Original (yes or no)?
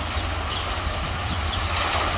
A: yes